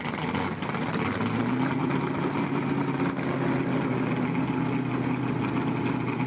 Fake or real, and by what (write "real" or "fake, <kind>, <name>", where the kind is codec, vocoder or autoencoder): real